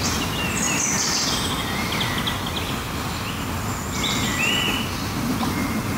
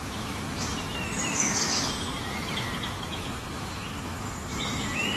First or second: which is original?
first